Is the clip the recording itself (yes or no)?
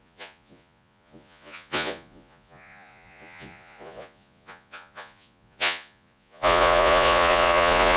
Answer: no